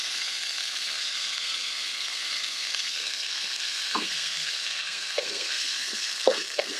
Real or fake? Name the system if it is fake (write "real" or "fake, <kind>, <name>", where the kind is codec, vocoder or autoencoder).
fake, codec, SNAC